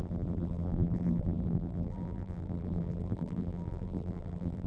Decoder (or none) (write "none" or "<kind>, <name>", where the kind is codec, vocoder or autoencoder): vocoder, BigVGAN v2